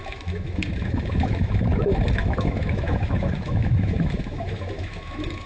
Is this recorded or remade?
remade